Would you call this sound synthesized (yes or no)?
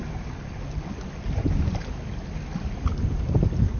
no